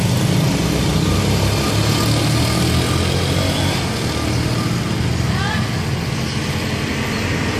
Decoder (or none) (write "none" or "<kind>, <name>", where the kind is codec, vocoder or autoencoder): none